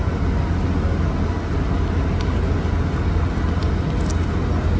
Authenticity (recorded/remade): recorded